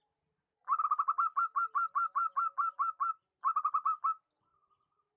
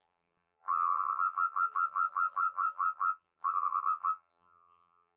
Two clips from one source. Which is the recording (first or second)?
first